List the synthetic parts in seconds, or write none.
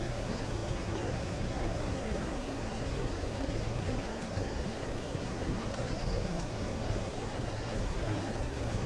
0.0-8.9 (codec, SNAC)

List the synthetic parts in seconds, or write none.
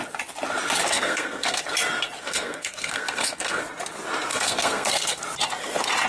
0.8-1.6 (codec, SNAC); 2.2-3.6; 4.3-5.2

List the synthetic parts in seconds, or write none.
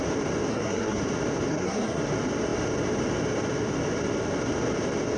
0.5-1.0 (codec, SNAC); 1.5-2.0